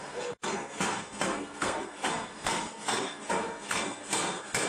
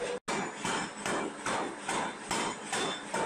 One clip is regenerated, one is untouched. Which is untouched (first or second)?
second